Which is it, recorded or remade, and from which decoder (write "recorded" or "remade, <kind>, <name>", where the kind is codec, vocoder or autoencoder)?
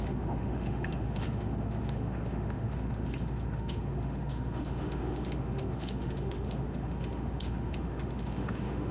remade, autoencoder, DAC-VAE